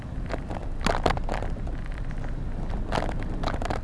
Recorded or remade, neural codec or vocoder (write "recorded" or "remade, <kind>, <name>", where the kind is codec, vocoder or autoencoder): recorded